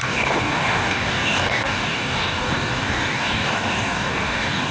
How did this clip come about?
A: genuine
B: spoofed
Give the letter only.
B